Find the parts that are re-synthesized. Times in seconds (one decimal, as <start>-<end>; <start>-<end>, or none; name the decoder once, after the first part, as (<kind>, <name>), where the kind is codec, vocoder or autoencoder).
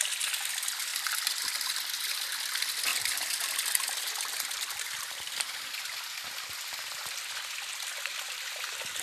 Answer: 0.9-1.6 (vocoder, BigVGAN v2); 2.9-5.6